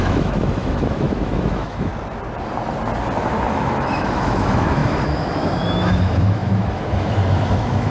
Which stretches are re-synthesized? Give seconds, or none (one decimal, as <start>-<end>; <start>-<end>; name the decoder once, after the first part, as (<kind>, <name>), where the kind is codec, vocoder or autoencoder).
0.0-1.9 (autoencoder, DAC-VAE); 3.5-7.9